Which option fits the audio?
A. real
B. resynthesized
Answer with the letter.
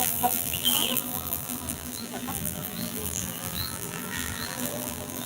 B